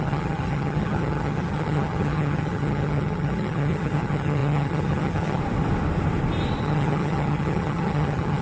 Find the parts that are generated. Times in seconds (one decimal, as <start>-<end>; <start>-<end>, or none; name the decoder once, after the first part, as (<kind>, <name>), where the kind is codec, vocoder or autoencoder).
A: 0.0-5.4 (vocoder, HiFi-GAN); 6.6-8.4